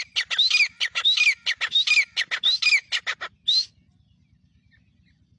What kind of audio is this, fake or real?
real